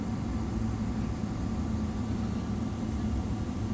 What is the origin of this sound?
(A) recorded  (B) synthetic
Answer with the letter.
A